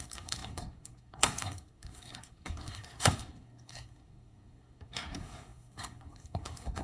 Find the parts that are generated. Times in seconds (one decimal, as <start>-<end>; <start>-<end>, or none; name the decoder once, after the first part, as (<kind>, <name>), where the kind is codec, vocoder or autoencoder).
0.0-6.8 (codec, SNAC)